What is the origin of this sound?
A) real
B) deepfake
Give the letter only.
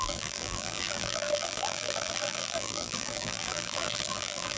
B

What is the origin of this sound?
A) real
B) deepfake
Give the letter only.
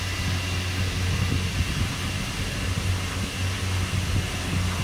A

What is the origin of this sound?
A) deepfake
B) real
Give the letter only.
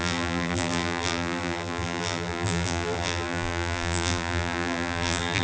A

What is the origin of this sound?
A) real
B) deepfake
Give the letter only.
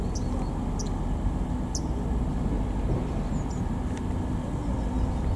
A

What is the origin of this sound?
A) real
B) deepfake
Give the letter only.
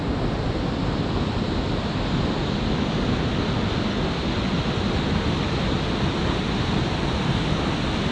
A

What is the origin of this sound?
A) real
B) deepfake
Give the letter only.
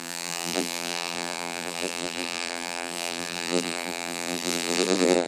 B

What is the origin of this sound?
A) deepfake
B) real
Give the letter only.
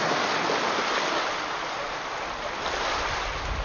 B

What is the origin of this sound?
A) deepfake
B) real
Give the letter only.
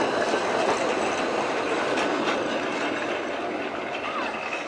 A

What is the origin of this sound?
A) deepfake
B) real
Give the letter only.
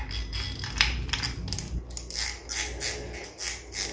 B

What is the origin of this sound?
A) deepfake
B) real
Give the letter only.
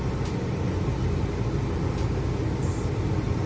B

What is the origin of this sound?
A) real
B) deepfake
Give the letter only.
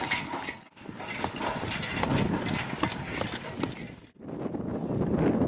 A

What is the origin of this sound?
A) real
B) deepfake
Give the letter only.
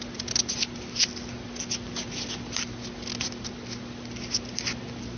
A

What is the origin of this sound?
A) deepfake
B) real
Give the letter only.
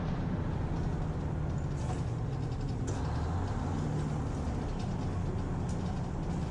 B